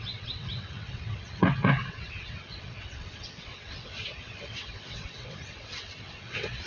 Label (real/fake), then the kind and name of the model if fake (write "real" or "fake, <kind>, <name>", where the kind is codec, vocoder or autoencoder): fake, vocoder, WaveNeXt